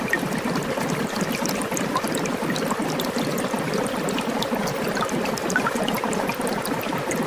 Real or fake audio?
real